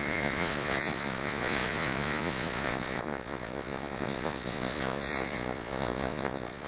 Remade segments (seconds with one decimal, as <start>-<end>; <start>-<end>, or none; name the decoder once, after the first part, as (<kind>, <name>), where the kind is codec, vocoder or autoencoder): 0.0-6.7 (vocoder, Vocos)